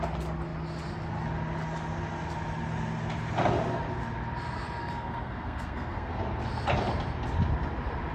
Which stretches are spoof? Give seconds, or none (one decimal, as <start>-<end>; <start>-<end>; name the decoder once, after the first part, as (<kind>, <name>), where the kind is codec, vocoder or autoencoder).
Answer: 4.8-6.2 (codec, SNAC)